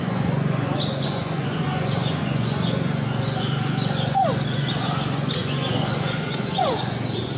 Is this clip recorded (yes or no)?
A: no